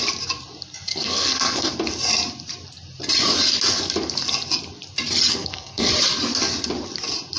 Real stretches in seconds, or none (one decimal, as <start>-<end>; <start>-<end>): 0.0-0.9; 1.7-5.3; 5.9-7.4